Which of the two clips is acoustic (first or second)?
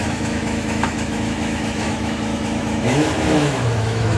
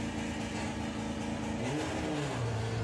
second